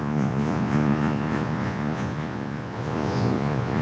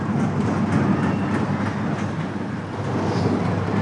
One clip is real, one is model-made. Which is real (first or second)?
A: second